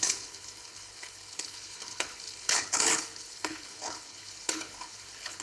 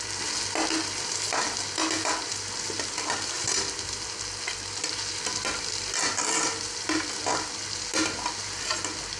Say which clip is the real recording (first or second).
second